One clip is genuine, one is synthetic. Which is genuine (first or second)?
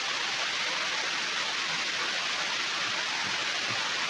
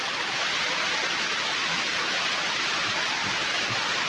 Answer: first